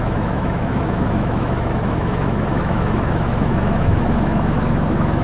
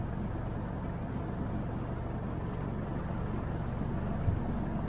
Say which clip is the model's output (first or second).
first